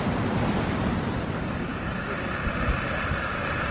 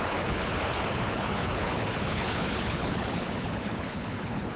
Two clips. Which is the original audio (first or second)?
first